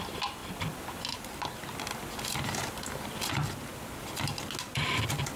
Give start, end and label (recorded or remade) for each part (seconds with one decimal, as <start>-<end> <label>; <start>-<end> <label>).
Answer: 0.0-0.4 remade; 0.4-2.7 recorded; 2.7-3.7 remade; 3.7-5.4 recorded